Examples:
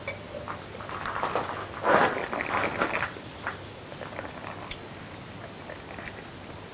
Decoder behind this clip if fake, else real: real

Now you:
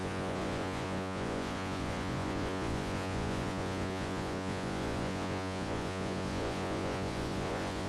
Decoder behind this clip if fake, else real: fake, vocoder, Vocos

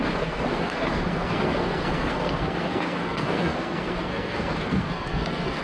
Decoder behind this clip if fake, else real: fake, codec, SNAC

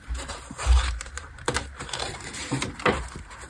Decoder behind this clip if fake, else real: fake, vocoder, BigVGAN v2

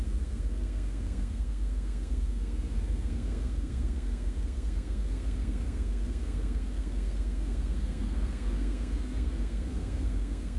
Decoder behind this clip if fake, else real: fake, codec, SNAC